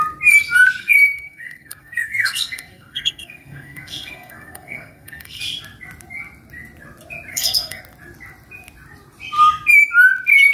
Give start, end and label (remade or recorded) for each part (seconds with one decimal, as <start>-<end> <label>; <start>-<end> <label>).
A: 0.0-0.8 recorded; 0.8-5.4 remade; 5.4-7.3 recorded; 7.3-7.8 remade; 7.8-10.5 recorded